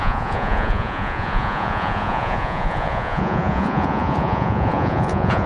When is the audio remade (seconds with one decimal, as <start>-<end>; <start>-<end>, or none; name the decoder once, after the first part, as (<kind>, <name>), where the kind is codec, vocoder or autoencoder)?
0.0-5.5 (vocoder, Vocos)

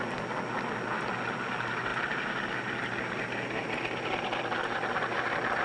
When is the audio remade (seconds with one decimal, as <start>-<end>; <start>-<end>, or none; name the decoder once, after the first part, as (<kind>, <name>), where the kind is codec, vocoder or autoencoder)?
none

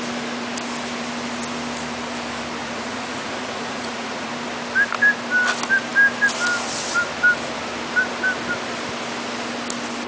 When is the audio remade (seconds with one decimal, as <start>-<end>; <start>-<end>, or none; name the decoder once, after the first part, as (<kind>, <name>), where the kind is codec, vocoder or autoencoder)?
2.6-4.3 (vocoder, Vocos)

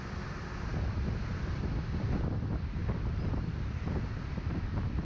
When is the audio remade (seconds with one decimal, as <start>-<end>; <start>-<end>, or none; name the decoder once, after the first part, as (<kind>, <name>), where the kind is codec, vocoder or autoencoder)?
none

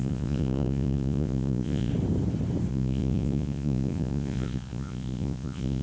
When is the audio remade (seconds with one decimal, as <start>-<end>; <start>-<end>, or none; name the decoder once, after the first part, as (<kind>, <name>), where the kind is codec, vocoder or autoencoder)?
0.0-1.9 (vocoder, Vocos); 2.7-5.8

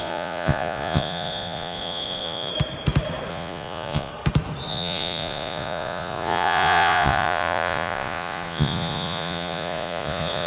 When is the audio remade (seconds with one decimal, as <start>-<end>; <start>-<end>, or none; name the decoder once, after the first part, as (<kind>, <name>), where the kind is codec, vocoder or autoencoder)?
0.0-2.5 (vocoder, Vocos); 3.3-4.1; 4.7-10.5

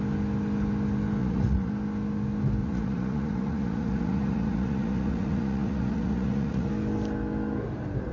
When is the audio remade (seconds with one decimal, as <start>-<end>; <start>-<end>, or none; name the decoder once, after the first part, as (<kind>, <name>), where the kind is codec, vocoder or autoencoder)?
1.2-1.7 (vocoder, Vocos); 2.6-6.7